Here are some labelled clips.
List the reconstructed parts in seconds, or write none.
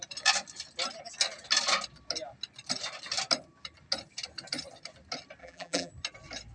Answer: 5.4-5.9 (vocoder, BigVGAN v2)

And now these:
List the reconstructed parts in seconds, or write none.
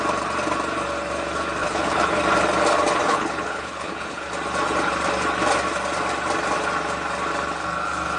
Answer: 1.6-2.2 (codec, HILCodec); 3.0-4.3